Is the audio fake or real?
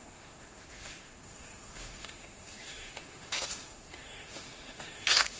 fake